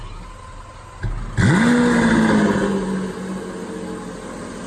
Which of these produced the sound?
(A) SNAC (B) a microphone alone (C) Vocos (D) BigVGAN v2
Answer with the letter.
B